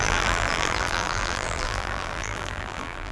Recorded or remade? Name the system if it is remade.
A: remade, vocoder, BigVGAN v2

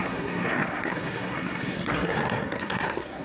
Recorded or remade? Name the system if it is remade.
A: remade, codec, SNAC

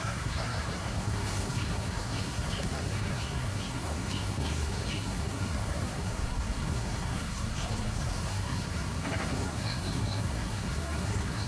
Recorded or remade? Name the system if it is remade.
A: remade, codec, SNAC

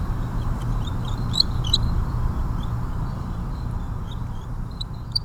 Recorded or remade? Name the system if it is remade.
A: remade, vocoder, BigVGAN v2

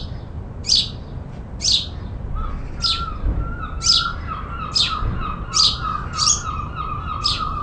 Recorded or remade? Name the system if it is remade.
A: recorded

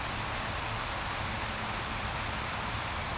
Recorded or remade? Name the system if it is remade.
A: recorded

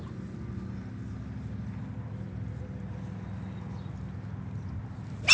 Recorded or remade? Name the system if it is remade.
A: recorded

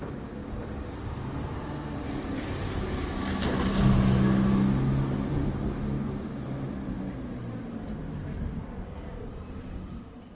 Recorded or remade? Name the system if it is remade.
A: recorded